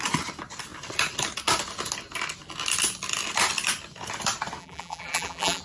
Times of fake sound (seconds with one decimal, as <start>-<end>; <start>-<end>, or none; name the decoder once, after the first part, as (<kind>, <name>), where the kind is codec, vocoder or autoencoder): 4.6-5.6 (vocoder, BigVGAN v2)